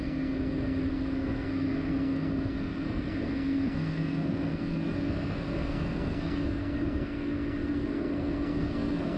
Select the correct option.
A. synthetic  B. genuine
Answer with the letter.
A